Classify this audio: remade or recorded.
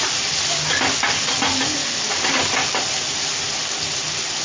recorded